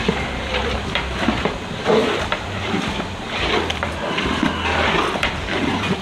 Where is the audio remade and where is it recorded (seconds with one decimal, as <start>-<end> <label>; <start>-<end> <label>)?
0.0-6.0 remade